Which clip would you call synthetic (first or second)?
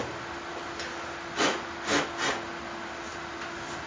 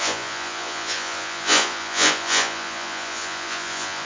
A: second